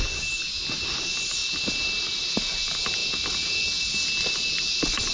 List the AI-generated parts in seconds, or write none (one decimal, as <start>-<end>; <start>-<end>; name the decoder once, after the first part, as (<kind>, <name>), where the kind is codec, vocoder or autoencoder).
none